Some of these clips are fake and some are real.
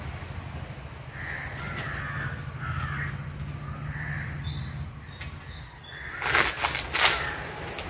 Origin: real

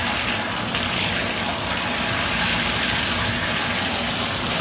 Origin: real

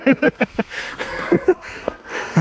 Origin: fake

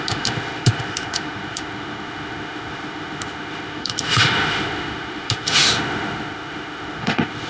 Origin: fake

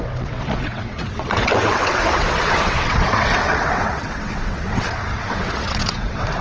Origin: fake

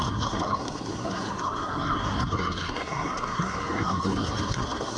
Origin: fake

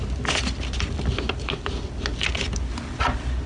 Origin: real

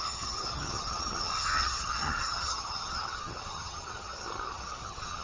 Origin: fake